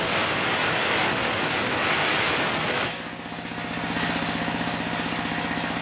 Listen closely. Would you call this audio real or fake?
real